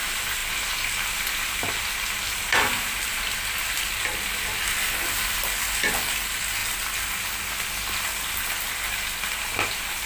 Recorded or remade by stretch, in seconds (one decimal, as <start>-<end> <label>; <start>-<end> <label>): 0.0-10.1 recorded